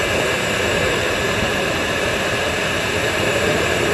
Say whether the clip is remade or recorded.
remade